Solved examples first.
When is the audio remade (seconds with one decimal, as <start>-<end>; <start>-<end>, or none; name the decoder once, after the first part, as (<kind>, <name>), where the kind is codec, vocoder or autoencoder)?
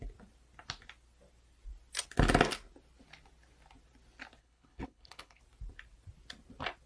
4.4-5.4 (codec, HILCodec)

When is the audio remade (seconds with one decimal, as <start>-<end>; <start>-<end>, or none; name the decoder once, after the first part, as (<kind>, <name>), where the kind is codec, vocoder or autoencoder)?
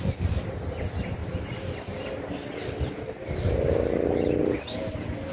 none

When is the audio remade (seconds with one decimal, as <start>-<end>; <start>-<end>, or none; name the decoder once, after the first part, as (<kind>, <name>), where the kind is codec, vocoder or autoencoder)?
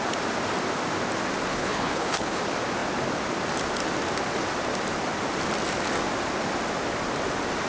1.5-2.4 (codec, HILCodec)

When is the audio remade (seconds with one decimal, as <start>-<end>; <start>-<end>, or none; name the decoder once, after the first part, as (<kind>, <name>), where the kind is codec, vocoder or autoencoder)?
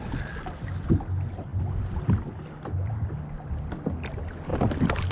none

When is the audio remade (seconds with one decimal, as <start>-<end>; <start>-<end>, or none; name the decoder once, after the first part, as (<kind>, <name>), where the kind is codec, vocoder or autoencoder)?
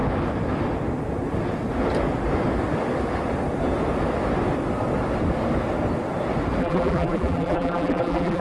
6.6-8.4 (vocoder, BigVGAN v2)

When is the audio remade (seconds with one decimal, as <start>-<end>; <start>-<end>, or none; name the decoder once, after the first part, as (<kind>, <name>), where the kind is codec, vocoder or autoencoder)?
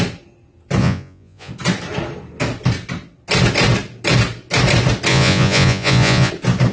0.8-1.5 (vocoder, Vocos); 5.1-6.3